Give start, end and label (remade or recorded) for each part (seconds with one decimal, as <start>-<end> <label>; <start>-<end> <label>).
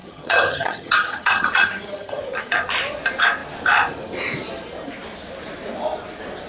0.0-2.2 remade; 2.2-6.5 recorded